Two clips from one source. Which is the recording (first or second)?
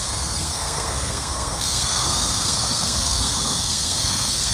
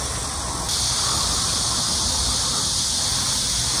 second